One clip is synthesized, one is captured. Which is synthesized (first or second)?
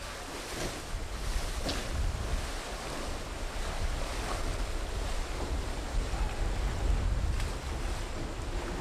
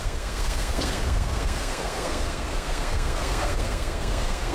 second